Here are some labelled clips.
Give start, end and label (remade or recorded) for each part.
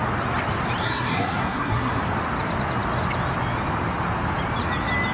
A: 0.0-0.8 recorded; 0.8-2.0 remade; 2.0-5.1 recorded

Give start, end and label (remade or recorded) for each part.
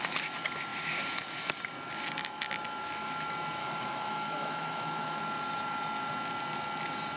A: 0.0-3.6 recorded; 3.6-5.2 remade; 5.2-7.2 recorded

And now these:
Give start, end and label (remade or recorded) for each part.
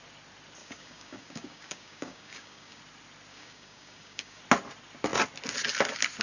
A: 0.0-0.6 recorded; 0.6-2.8 remade; 2.8-3.3 recorded; 3.3-4.4 remade; 4.4-6.2 recorded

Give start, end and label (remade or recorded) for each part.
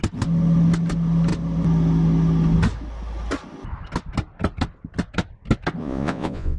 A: 0.0-5.8 recorded; 5.8-6.6 remade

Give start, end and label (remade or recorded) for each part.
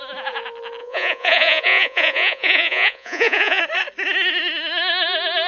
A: 0.0-0.8 recorded; 0.8-3.6 remade; 3.6-5.5 recorded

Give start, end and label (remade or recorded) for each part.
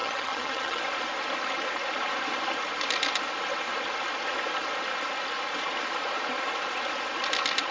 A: 0.0-0.8 remade; 0.8-7.7 recorded